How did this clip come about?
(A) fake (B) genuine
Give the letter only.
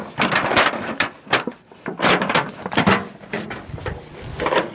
B